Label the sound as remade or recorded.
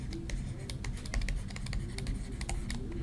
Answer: recorded